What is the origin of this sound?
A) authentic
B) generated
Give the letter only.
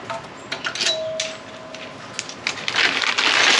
A